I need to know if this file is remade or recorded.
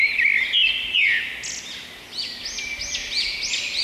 recorded